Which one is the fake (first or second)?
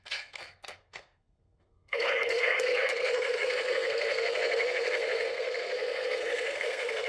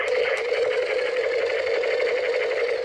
first